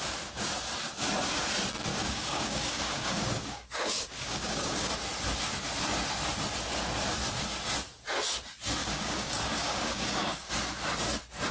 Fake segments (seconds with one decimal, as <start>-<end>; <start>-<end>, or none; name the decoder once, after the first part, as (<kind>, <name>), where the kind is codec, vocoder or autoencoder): 1.9-4.9 (codec, DAC); 8.8-10.5